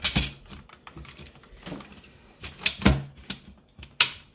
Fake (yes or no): no